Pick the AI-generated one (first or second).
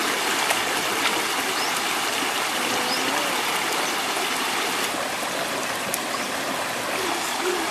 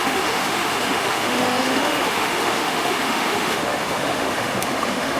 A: second